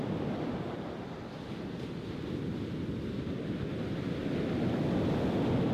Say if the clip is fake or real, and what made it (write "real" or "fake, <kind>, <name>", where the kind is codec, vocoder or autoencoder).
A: real